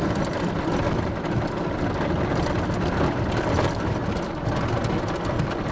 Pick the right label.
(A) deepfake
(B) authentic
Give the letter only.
B